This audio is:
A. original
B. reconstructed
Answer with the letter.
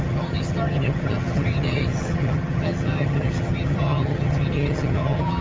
B